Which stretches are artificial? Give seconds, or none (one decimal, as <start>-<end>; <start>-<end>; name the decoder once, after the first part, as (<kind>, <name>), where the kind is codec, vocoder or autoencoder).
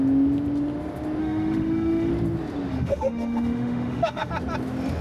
1.2-2.1 (autoencoder, DAC-VAE); 2.7-4.3